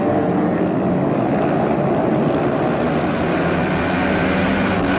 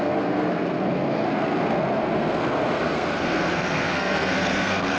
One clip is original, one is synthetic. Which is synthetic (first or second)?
second